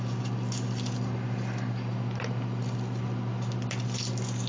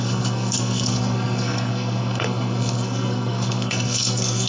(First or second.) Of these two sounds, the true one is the first